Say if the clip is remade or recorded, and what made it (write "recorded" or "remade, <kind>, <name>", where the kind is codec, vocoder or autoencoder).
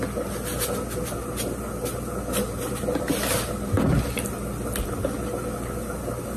recorded